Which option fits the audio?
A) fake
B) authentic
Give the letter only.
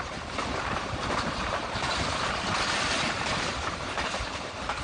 B